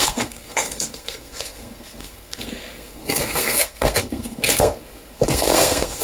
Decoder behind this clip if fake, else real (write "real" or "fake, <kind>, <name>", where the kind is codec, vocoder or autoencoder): fake, codec, SNAC